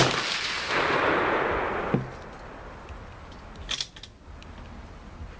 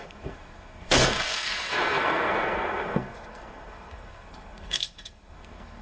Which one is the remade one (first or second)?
second